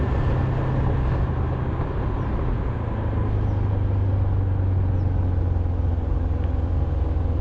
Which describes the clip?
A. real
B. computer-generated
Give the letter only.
A